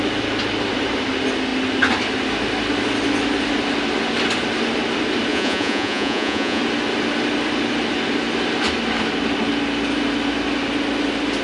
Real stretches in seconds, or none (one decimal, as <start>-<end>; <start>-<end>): 0.0-5.3; 6.6-11.4